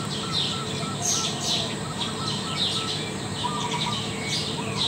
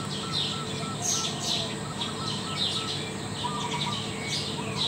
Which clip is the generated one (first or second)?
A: first